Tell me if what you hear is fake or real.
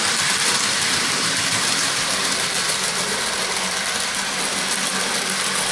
fake